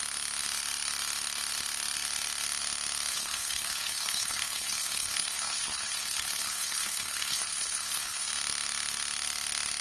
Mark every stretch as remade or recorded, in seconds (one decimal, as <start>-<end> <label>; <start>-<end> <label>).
0.0-3.1 recorded; 3.1-8.3 remade; 8.3-9.8 recorded